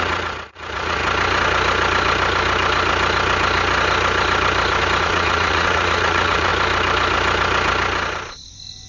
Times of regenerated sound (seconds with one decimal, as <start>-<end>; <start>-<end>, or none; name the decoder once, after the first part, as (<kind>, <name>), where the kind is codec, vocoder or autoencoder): 0.0-1.0 (vocoder, Vocos); 5.0-6.5